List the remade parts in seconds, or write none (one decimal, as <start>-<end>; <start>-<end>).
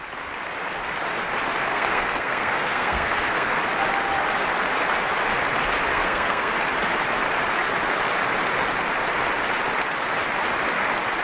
1.7-3.6; 5.9-6.5